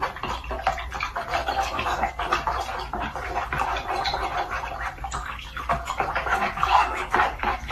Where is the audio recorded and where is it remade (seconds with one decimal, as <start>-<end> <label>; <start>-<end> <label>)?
0.0-1.4 recorded; 1.4-2.2 remade; 2.2-5.2 recorded; 5.2-7.7 remade